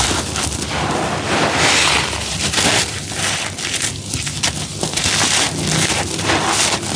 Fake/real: fake